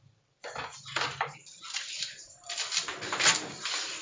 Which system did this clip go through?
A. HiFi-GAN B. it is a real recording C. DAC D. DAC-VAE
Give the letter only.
B